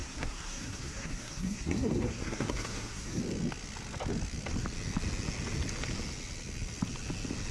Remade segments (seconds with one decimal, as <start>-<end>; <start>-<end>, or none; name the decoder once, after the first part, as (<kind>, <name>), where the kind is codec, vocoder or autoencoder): 0.0-3.2 (codec, SNAC)